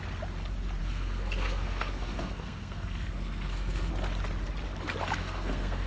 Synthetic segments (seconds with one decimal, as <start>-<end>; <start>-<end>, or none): 0.8-3.9; 5.2-5.9

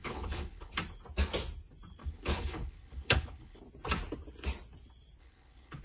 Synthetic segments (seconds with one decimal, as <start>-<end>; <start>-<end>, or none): 0.0-0.7; 2.0-3.6; 5.2-5.8